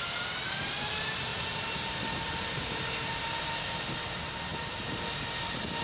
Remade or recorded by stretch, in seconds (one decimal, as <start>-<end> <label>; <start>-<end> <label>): 0.0-5.8 recorded